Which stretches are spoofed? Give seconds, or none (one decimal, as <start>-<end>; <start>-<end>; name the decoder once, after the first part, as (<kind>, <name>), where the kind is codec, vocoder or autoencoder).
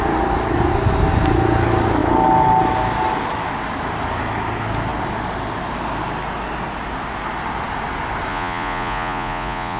8.3-9.8 (vocoder, Vocos)